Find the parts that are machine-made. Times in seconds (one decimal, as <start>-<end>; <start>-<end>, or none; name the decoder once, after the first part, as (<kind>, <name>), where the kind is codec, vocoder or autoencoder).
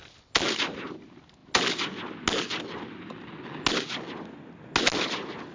none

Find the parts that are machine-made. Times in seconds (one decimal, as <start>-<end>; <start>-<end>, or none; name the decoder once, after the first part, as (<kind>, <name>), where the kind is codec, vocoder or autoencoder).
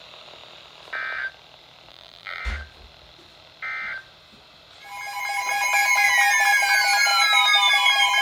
1.9-2.4 (vocoder, BigVGAN v2)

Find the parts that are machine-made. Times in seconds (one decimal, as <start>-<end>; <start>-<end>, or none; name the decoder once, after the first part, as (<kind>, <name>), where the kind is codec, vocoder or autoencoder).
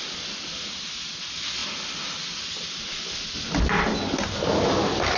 none